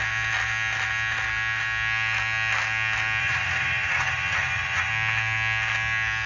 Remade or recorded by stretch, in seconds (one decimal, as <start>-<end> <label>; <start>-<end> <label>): 0.0-3.2 recorded; 3.2-4.9 remade; 4.9-6.3 recorded